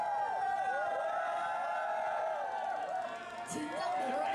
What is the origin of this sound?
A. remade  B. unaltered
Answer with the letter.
B